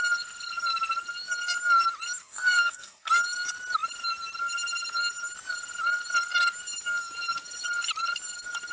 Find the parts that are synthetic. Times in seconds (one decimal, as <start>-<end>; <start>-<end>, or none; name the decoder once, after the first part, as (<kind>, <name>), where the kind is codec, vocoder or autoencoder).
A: 2.2-3.1 (codec, SNAC)